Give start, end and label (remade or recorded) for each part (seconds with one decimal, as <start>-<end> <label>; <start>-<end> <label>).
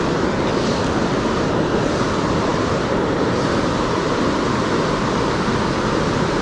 0.0-6.4 recorded